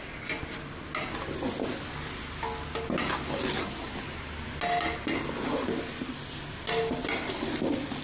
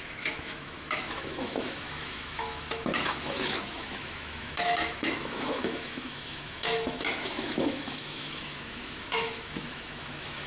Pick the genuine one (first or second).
first